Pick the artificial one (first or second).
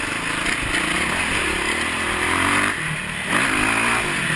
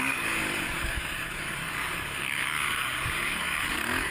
second